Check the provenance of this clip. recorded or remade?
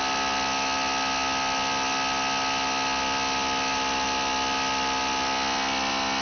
recorded